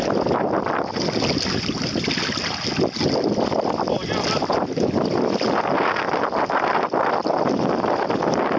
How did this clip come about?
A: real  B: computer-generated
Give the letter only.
A